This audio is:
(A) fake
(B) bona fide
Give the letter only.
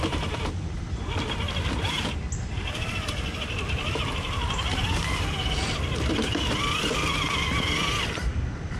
B